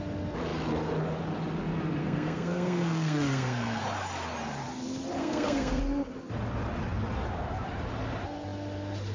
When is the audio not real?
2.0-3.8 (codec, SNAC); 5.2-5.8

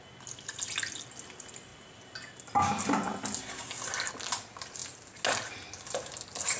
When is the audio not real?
none

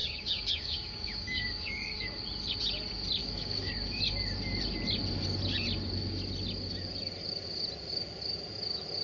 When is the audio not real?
0.0-2.2 (codec, DAC); 3.2-3.7

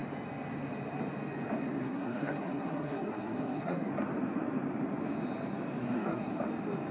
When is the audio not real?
1.8-3.9 (codec, SNAC); 5.8-6.4

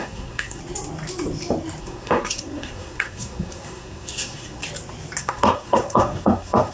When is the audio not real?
0.0-0.6 (codec, SNAC); 1.8-4.6; 5.2-6.7

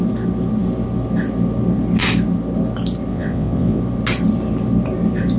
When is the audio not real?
3.1-3.8 (vocoder, WaveNeXt)

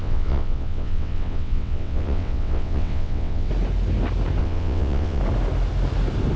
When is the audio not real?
0.0-3.5 (vocoder, WaveNeXt); 4.4-5.2

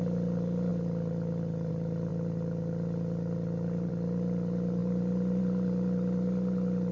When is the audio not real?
none